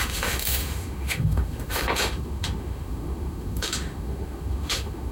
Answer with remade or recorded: remade